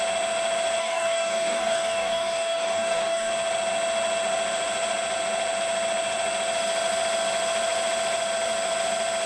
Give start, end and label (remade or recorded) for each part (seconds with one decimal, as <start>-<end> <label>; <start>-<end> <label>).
0.0-0.8 recorded; 0.8-3.3 remade; 3.3-9.3 recorded